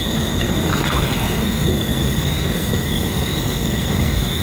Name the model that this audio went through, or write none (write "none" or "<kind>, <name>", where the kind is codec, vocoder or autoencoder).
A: codec, SNAC